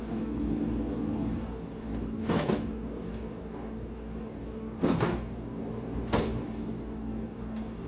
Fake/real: fake